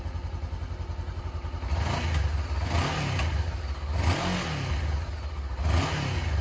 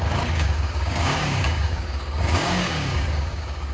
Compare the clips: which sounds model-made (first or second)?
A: second